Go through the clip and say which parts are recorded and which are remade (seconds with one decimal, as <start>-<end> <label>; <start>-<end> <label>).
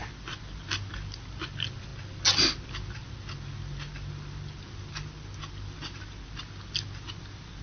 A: 0.0-7.6 recorded